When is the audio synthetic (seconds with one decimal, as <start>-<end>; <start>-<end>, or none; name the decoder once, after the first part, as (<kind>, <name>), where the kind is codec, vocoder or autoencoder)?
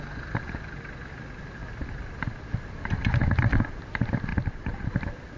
1.6-3.8 (vocoder, BigVGAN v2); 4.3-4.9